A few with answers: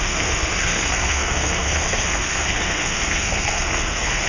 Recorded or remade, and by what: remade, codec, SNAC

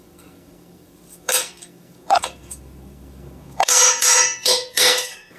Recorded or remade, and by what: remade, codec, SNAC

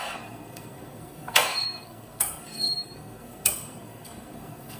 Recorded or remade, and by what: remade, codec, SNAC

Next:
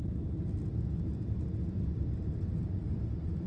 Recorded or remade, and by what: recorded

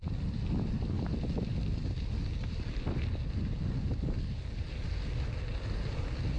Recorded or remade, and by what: recorded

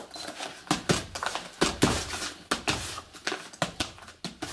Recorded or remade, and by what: recorded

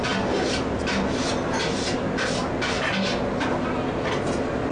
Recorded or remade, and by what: recorded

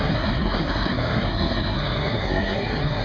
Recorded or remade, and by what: remade, codec, SNAC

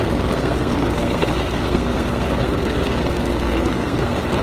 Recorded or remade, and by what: remade, codec, SNAC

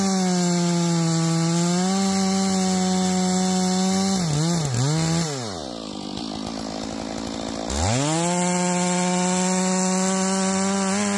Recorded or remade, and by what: recorded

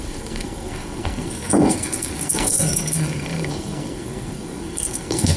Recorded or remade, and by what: remade, codec, SNAC